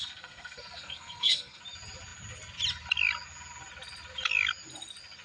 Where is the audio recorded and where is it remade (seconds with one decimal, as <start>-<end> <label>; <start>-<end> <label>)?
0.0-1.6 remade; 1.6-5.2 recorded